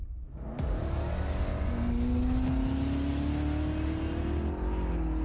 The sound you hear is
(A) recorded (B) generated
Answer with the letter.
A